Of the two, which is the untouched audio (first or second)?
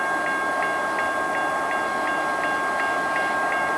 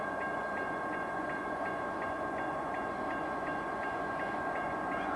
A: first